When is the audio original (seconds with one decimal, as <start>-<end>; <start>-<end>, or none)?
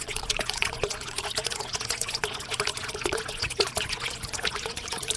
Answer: none